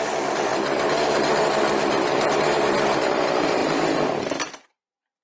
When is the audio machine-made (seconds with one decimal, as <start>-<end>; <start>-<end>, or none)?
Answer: 0.5-1.4